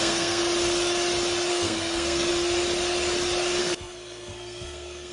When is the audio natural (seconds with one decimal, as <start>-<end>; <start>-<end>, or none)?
0.4-1.5; 2.3-3.6

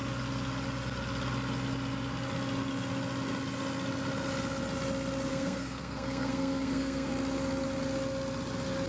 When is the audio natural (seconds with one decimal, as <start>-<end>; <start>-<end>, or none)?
0.0-5.3; 7.1-8.9

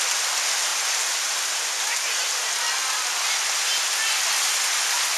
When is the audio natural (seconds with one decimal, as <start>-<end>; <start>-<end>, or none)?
0.0-5.2

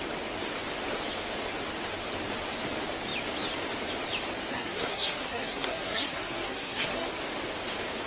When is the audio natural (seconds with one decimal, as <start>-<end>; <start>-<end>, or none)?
0.0-4.5; 7.1-8.1

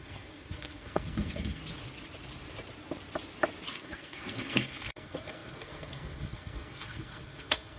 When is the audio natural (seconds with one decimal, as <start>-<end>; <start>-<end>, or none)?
1.6-3.7

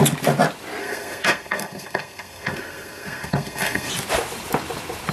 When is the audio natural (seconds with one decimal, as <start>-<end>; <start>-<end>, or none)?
0.0-0.8; 3.9-5.1

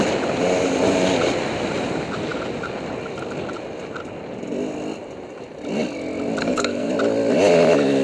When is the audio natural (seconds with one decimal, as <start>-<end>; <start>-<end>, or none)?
0.0-6.4; 6.9-8.0